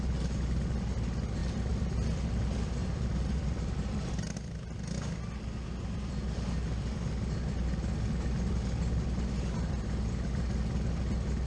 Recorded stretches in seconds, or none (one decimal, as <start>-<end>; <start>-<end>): 0.0-1.4; 2.3-2.8; 3.9-11.5